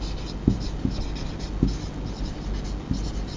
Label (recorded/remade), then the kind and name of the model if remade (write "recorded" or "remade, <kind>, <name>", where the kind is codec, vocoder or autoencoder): recorded